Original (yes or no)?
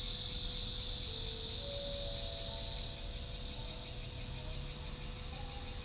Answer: yes